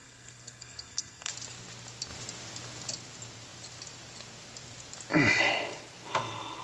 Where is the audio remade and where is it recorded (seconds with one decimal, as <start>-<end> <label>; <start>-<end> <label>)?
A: 0.0-1.3 remade; 1.3-6.6 recorded